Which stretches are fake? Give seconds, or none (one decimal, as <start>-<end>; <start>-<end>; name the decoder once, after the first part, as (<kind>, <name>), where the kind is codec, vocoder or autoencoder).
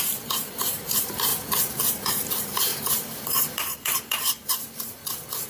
0.0-1.3 (vocoder, BigVGAN v2); 1.9-5.0